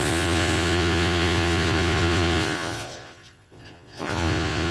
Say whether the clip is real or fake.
fake